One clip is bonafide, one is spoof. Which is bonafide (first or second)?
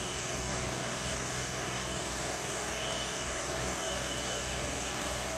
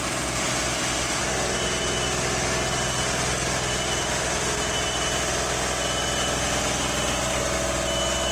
second